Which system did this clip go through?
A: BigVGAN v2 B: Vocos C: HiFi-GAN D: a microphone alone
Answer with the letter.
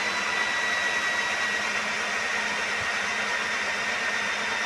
D